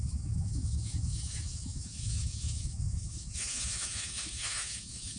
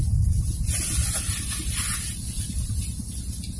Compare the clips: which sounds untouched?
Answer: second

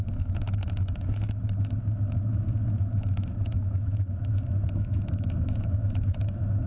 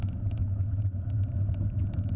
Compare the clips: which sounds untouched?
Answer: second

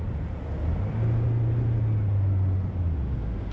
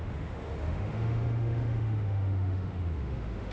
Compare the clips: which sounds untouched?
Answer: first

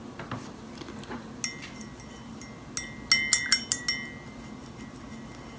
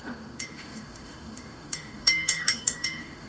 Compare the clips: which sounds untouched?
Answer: first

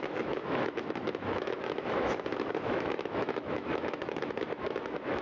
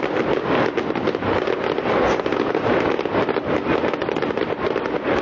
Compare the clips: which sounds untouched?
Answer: second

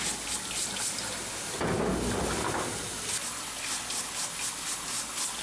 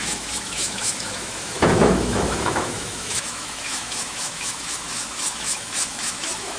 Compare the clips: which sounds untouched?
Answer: first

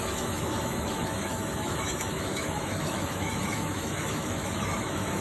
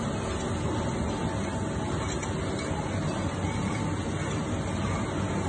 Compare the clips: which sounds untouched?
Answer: second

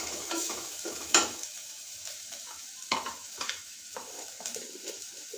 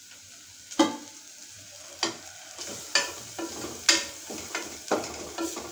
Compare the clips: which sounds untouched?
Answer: second